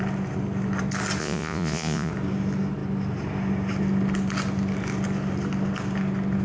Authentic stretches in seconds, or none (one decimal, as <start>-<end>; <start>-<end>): 0.0-1.2; 2.1-6.4